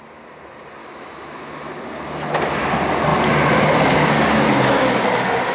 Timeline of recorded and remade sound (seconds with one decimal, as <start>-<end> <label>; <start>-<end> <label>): 0.0-0.8 recorded; 0.8-1.7 remade; 1.7-5.5 recorded